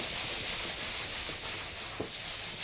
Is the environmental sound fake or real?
real